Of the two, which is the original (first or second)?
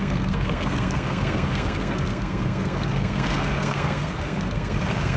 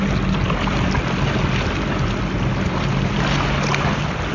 second